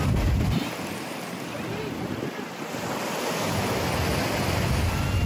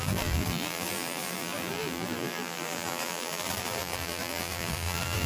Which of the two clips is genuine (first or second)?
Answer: first